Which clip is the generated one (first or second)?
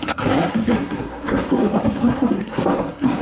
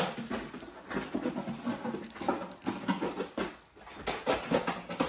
first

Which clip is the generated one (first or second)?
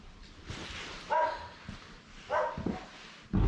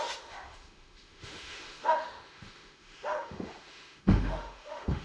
second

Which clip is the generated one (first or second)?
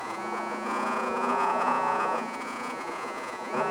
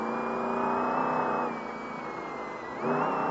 first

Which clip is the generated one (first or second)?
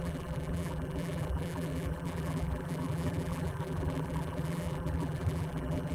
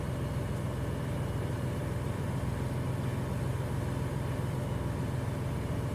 first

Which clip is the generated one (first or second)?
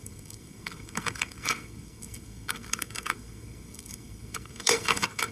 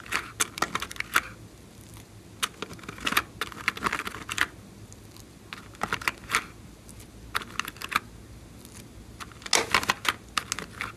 first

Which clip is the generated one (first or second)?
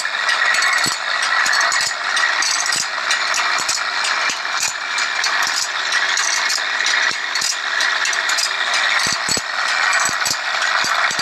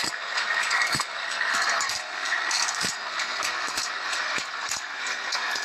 second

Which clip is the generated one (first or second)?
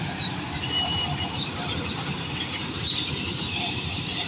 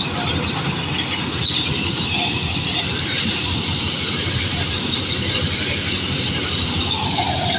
first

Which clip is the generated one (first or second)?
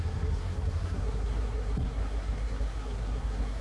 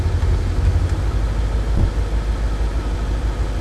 first